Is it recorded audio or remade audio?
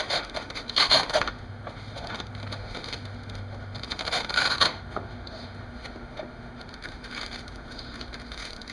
remade